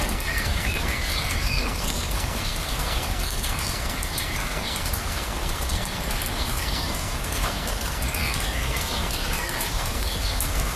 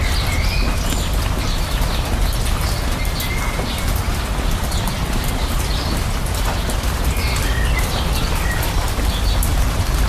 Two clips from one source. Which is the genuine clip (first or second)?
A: second